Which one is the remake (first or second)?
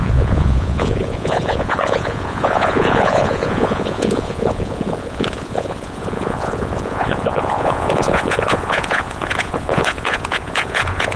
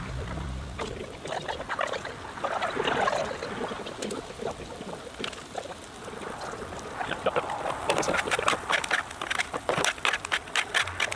first